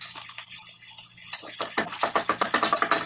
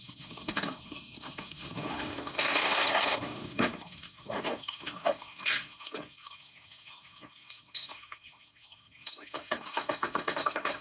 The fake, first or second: second